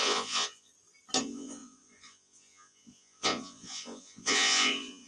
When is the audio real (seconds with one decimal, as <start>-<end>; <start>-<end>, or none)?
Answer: 0.7-1.2